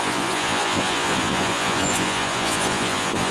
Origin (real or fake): fake